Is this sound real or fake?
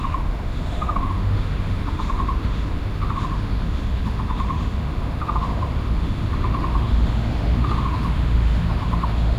fake